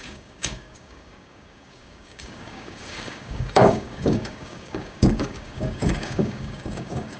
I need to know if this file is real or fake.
fake